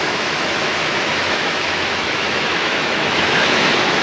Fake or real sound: fake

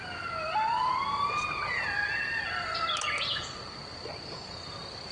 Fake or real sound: real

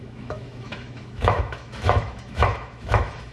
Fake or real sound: fake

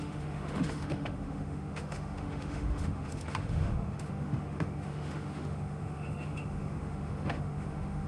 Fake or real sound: fake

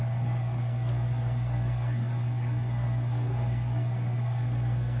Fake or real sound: fake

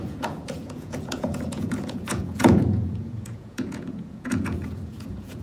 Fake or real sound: fake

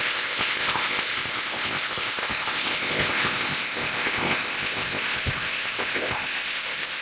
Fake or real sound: fake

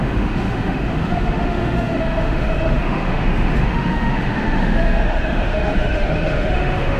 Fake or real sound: fake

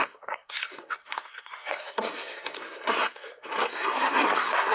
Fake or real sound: fake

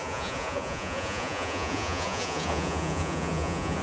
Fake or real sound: fake